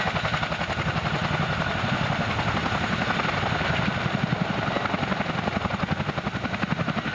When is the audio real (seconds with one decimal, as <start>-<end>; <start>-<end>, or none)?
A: 0.0-7.1